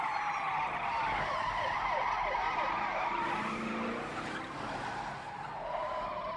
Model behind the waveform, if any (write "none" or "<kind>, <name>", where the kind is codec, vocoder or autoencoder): none